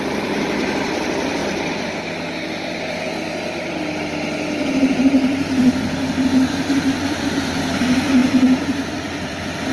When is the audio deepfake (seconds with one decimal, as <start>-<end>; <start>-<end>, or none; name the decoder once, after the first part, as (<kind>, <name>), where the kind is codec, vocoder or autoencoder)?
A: 0.0-1.4 (vocoder, BigVGAN v2); 4.9-9.7